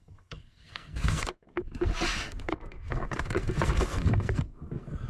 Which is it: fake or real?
fake